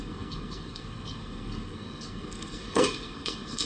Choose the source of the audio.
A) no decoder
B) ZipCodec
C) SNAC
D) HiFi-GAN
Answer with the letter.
C